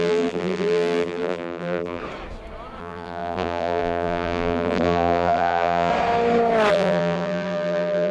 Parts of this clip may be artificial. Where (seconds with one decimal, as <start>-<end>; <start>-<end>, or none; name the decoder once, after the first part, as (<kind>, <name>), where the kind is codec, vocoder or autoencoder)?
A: 0.0-2.0 (vocoder, BigVGAN v2); 2.8-5.9; 6.7-8.1

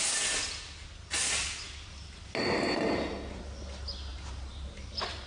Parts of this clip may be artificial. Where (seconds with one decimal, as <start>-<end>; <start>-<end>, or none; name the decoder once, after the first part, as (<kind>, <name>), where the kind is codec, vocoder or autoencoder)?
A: 4.1-5.3 (vocoder, BigVGAN v2)